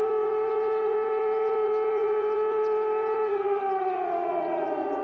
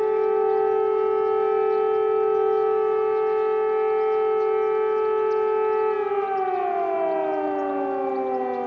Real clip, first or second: second